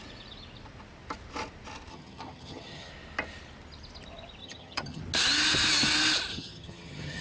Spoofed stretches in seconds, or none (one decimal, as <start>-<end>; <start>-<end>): 1.9-2.9; 4.4-5.0; 6.3-7.2